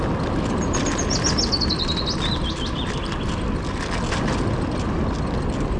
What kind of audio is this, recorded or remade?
recorded